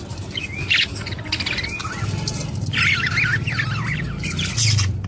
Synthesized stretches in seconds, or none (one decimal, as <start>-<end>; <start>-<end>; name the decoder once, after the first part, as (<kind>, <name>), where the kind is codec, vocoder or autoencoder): none